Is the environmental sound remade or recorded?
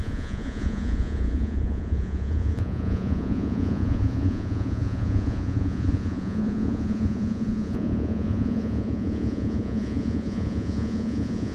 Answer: remade